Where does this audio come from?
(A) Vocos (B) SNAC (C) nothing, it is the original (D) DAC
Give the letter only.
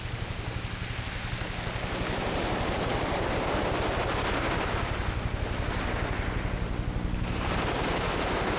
C